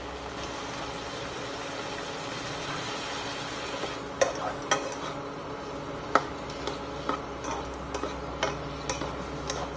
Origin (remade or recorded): recorded